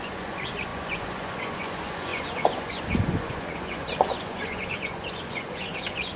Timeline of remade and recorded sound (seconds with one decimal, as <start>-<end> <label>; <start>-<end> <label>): 0.0-6.2 remade